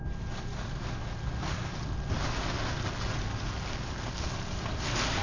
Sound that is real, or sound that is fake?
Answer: real